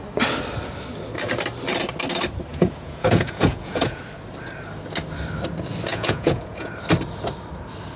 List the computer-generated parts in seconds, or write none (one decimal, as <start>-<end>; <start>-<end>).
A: 2.5-4.0; 5.9-6.7